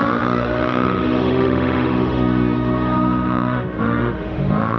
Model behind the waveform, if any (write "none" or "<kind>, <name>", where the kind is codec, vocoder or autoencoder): autoencoder, DAC-VAE